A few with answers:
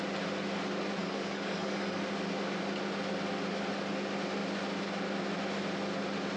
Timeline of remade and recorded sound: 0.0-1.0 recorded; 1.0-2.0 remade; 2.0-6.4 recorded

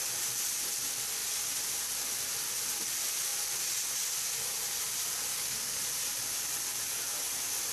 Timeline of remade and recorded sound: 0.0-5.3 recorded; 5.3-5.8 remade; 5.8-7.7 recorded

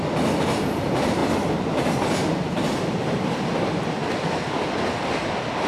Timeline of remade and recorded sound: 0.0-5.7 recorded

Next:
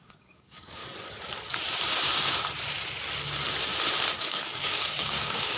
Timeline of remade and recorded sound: 0.0-0.8 remade; 0.8-4.2 recorded; 4.2-5.6 remade

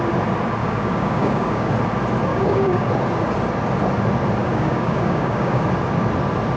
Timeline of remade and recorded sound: 0.0-0.6 recorded; 0.6-1.7 remade; 1.7-2.3 recorded; 2.3-2.9 remade; 2.9-4.4 recorded; 4.4-5.6 remade; 5.6-6.6 recorded

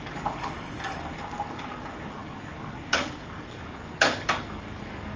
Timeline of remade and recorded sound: 0.0-5.2 remade

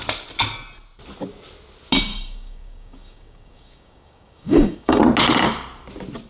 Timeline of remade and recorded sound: 0.0-2.1 recorded; 2.1-5.0 remade; 5.0-6.3 recorded

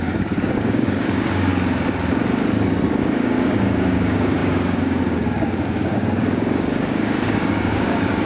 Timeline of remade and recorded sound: 0.0-1.5 remade; 1.5-3.0 recorded; 3.0-8.3 remade